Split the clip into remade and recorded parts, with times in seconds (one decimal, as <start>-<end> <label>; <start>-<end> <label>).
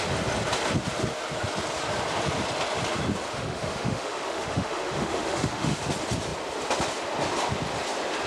0.0-3.3 recorded; 3.3-5.8 remade; 5.8-8.3 recorded